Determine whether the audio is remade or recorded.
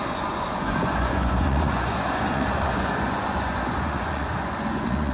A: remade